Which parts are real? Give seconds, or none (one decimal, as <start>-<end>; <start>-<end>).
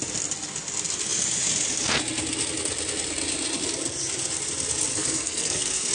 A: 0.0-4.9